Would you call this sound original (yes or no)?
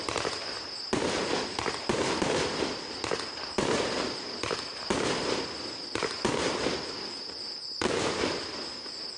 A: yes